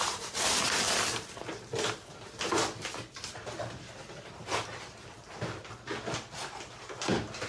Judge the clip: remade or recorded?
recorded